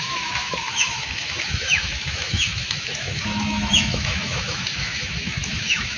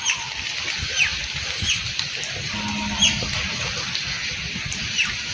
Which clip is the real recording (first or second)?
second